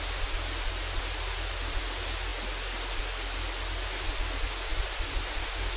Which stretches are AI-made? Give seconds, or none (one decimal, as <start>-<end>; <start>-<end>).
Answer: 4.7-5.8